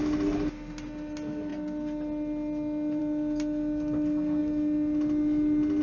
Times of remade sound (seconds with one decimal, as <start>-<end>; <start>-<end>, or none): none